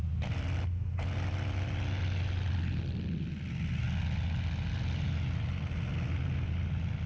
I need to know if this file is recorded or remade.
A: recorded